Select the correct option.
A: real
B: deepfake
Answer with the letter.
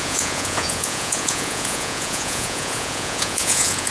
B